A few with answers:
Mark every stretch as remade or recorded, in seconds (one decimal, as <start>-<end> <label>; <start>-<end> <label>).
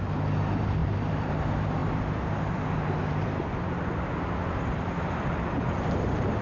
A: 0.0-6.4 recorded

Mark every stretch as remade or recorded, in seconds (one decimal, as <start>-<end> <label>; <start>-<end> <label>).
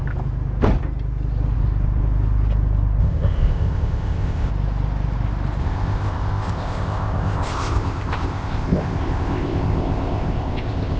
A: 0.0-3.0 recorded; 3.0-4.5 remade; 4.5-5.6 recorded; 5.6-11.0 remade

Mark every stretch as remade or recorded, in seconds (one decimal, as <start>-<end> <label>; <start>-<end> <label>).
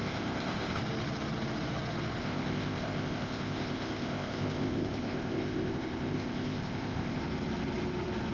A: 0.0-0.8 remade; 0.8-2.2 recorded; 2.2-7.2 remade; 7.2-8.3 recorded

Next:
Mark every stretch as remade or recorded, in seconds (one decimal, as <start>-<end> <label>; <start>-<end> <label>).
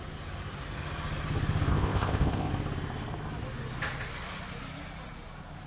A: 0.0-1.7 recorded; 1.7-2.5 remade; 2.5-5.7 recorded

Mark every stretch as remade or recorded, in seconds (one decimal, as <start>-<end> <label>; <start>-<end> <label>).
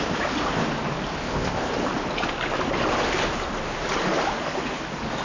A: 0.0-1.2 recorded; 1.2-1.7 remade; 1.7-5.2 recorded